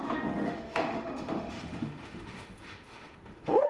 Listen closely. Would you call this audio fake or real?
fake